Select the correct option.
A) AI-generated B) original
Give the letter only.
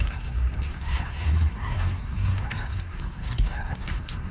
A